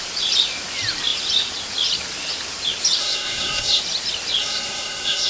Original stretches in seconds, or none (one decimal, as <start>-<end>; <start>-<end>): 0.0-3.0; 3.8-4.4